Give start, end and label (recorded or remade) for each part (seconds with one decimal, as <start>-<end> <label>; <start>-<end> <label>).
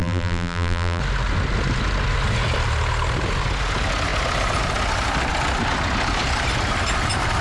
0.0-1.0 remade; 1.0-7.4 recorded